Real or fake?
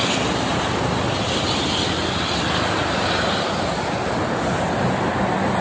real